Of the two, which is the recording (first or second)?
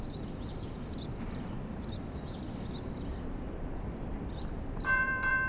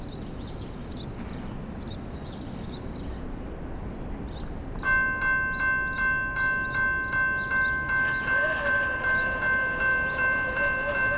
second